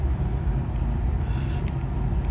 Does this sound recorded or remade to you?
recorded